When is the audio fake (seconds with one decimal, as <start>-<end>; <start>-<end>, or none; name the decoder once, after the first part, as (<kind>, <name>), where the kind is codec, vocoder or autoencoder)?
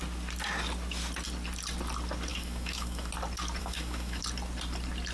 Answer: 2.3-3.1 (autoencoder, DAC-VAE); 3.6-4.2